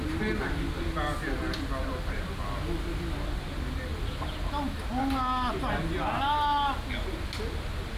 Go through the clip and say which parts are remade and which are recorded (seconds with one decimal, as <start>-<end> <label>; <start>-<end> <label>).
0.0-8.0 recorded